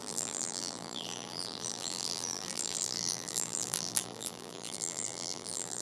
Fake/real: fake